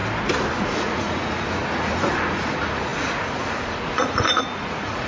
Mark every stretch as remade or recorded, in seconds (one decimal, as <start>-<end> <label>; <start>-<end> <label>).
0.0-0.6 recorded; 0.6-5.1 remade

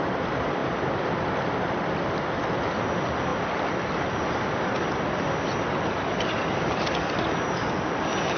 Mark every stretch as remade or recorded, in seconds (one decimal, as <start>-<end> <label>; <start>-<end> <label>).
0.0-8.4 recorded

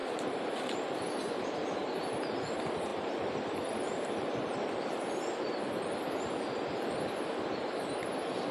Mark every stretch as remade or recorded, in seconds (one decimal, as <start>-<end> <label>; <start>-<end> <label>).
0.0-8.5 recorded

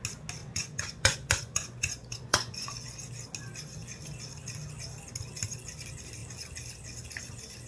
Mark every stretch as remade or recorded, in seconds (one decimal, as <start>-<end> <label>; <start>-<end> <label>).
0.0-0.4 recorded; 0.4-2.7 remade; 2.7-7.7 recorded

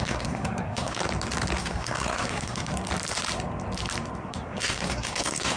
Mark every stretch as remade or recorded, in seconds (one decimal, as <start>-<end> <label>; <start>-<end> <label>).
0.0-1.0 remade; 1.0-1.6 recorded; 1.6-2.7 remade; 2.7-4.3 recorded; 4.3-5.6 remade

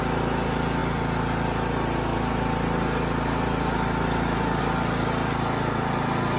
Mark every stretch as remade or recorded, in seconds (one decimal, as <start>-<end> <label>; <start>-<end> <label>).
0.0-6.4 recorded